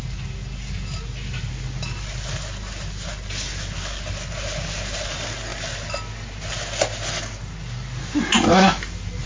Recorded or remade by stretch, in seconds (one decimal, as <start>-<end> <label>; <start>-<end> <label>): 0.0-9.3 recorded

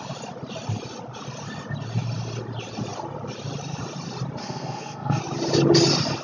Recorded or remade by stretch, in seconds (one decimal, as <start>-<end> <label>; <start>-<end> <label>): 0.0-4.4 recorded; 4.4-5.2 remade; 5.2-6.2 recorded

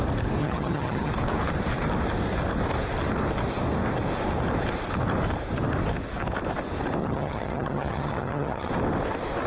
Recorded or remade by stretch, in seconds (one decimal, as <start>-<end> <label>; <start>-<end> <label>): 0.0-0.4 recorded; 0.4-1.1 remade; 1.1-7.0 recorded; 7.0-8.7 remade; 8.7-9.5 recorded

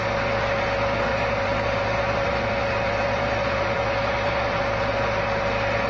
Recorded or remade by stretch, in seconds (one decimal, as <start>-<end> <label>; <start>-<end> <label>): 0.0-1.1 recorded; 1.1-4.6 remade; 4.6-5.9 recorded